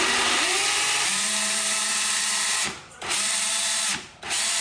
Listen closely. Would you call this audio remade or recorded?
remade